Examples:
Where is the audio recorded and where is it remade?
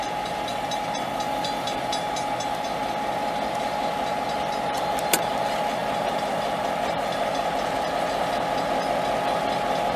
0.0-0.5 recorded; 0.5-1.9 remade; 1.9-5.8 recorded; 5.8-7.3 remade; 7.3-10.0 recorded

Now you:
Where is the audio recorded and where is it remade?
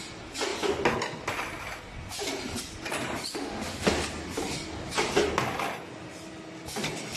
0.0-3.3 recorded; 3.3-3.9 remade; 3.9-7.2 recorded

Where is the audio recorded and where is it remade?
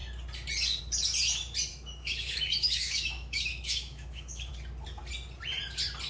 0.0-1.7 recorded; 1.7-4.5 remade; 4.5-6.1 recorded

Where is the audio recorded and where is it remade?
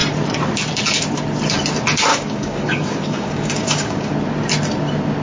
0.0-2.1 recorded; 2.1-4.1 remade; 4.1-5.2 recorded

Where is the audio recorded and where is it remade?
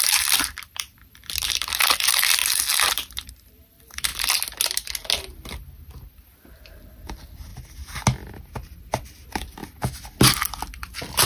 0.0-2.4 remade; 2.4-3.3 recorded; 3.3-4.1 remade; 4.1-6.3 recorded; 6.3-7.5 remade; 7.5-8.8 recorded; 8.8-9.6 remade; 9.6-10.9 recorded; 10.9-11.3 remade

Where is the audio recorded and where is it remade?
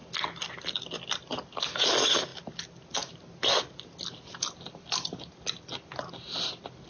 0.0-6.9 recorded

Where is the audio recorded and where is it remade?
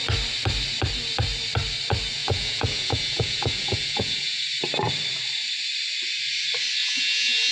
0.0-2.2 recorded; 2.2-4.4 remade; 4.4-6.8 recorded; 6.8-7.5 remade